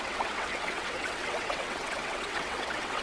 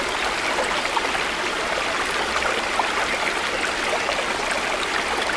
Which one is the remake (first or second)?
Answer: first